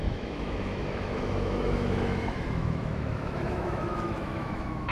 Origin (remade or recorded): remade